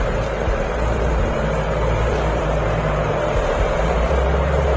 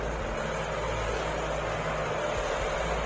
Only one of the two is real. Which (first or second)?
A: second